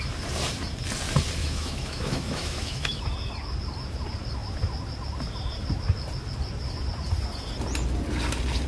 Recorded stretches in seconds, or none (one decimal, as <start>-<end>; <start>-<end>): 0.0-1.4; 3.0-8.7